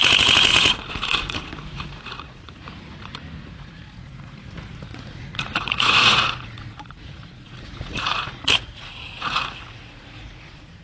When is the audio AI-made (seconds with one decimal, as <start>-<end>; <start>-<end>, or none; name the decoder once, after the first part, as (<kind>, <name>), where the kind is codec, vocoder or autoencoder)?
0.0-10.8 (vocoder, Vocos)